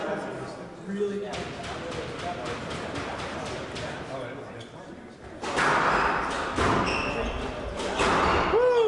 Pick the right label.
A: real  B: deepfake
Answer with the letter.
A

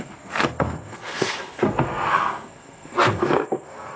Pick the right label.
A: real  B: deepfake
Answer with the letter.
B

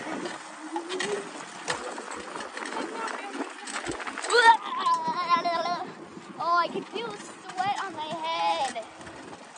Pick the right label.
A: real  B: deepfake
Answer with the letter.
A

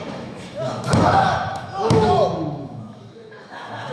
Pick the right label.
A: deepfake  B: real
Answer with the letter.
A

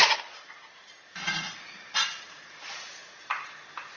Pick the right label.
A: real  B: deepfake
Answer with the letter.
A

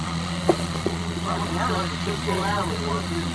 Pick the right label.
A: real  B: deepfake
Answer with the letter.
B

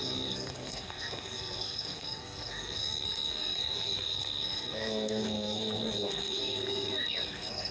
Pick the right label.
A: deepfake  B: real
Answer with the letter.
A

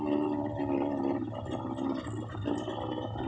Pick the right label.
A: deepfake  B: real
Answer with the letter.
B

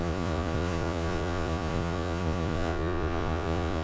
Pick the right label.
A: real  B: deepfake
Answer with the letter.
B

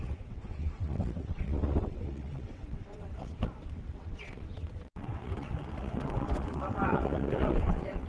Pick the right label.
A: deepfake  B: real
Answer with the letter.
A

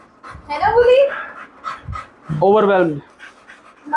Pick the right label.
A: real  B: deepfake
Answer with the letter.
A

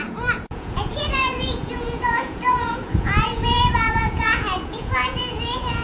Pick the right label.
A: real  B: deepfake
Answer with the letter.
B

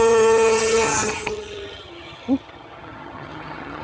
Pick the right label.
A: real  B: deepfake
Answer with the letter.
B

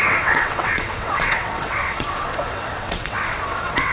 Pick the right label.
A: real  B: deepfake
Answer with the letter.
B